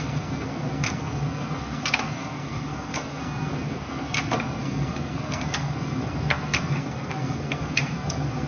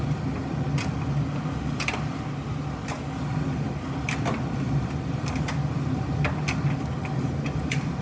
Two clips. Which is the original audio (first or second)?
second